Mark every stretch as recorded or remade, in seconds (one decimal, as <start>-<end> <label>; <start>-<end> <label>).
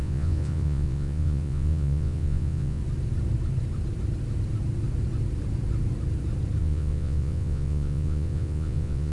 0.0-2.8 remade; 2.8-6.6 recorded; 6.6-9.1 remade